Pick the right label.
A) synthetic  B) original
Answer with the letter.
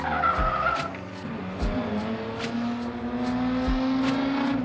B